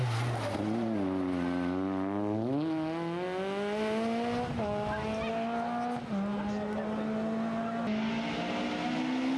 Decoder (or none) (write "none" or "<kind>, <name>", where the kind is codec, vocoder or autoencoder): none